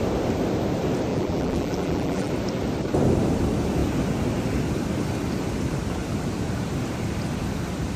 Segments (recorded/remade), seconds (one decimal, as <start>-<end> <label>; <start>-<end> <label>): 0.0-1.1 recorded; 1.1-2.3 remade; 2.3-8.0 recorded

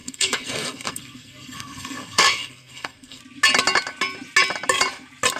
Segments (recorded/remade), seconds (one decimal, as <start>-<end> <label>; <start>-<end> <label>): 0.0-3.2 remade; 3.2-5.4 recorded

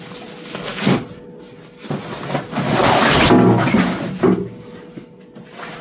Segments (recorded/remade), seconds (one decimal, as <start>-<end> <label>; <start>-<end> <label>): 0.0-5.8 recorded

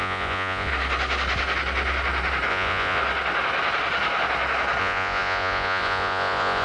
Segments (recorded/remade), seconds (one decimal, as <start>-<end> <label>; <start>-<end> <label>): 0.0-0.7 remade; 0.7-2.5 recorded; 2.5-3.0 remade; 3.0-4.8 recorded; 4.8-6.6 remade

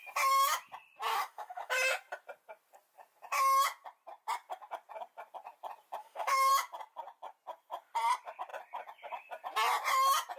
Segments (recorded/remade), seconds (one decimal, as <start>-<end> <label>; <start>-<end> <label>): 0.0-1.1 recorded; 1.1-1.7 remade; 1.7-6.0 recorded; 6.0-6.5 remade; 6.5-10.4 recorded

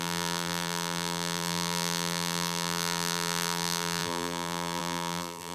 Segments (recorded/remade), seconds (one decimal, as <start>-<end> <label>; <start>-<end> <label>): 0.0-5.5 remade

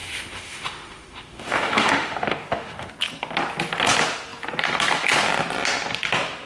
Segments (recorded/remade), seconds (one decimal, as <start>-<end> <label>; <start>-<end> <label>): 0.0-2.9 remade; 2.9-6.5 recorded